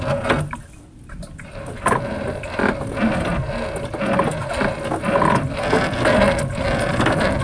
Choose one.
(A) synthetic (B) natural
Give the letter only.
B